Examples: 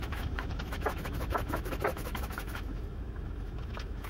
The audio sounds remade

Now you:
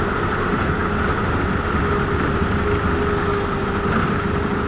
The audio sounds recorded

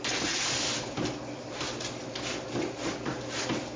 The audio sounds recorded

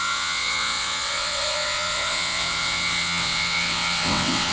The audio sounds remade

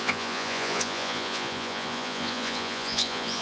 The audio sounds remade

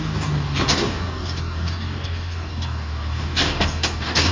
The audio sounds remade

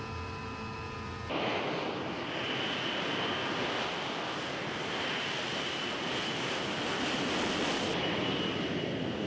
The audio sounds recorded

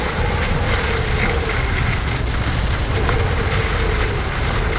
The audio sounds recorded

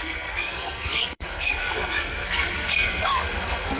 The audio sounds remade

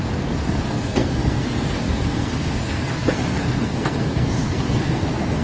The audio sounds remade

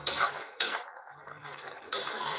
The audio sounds remade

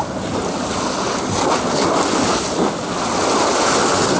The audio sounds recorded